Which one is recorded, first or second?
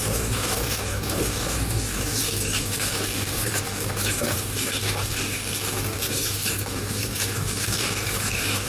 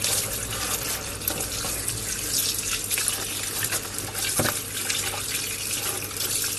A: second